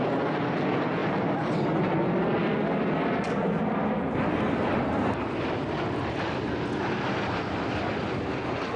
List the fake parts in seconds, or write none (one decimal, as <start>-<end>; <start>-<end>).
none